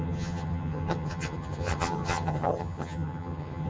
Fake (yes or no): yes